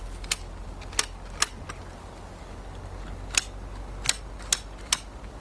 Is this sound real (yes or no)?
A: yes